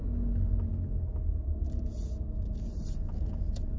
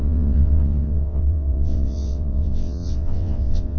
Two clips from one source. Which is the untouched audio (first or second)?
first